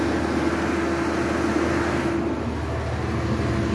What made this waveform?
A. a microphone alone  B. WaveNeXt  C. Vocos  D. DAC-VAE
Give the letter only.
A